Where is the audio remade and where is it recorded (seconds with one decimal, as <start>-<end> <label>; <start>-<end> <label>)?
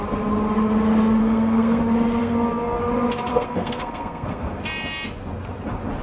0.0-1.2 recorded; 1.2-1.8 remade; 1.8-2.2 recorded; 2.2-2.8 remade; 2.8-3.3 recorded; 3.3-4.6 remade; 4.6-6.0 recorded